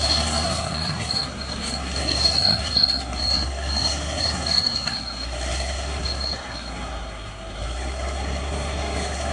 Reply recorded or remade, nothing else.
remade